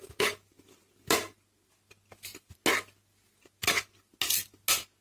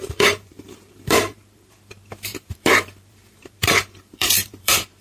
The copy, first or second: second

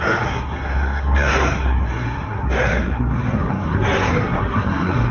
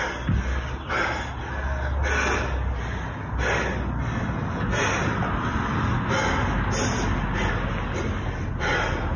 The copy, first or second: first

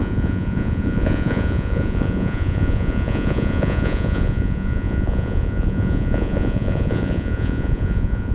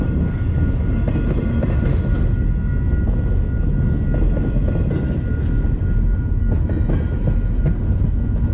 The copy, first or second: first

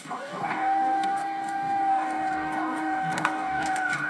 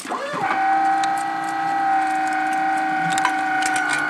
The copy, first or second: first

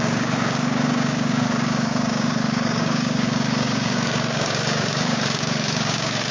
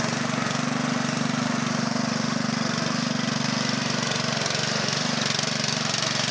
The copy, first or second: first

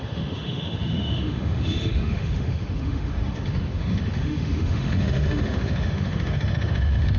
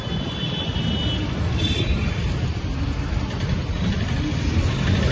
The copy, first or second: first